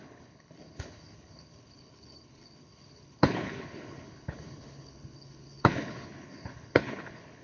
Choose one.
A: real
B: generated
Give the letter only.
B